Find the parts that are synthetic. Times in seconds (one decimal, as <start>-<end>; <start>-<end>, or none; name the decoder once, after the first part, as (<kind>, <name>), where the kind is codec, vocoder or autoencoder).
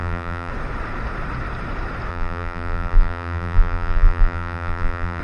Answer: 0.0-0.5 (vocoder, BigVGAN v2); 2.1-5.2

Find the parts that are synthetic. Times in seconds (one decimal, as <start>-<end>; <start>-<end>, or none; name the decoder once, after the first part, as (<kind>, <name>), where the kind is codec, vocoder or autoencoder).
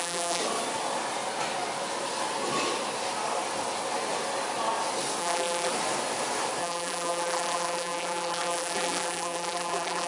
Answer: 0.0-0.4 (vocoder, BigVGAN v2); 5.2-5.7; 6.6-10.1